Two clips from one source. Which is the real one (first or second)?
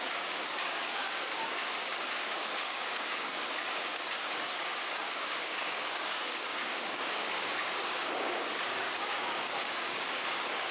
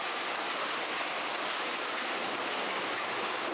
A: second